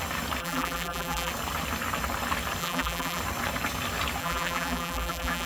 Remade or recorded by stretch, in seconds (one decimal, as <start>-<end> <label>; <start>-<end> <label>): 0.0-0.4 recorded; 0.4-1.3 remade; 1.3-2.6 recorded; 2.6-3.2 remade; 3.2-4.2 recorded; 4.2-5.5 remade